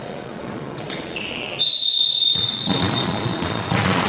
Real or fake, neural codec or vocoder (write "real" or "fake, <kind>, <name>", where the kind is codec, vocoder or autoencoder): fake, vocoder, Vocos